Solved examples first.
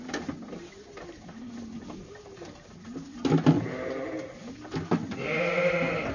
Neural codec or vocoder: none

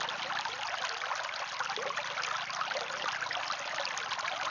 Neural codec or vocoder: none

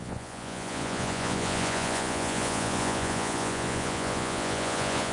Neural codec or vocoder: vocoder, Vocos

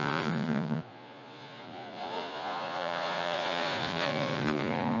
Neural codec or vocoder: vocoder, Vocos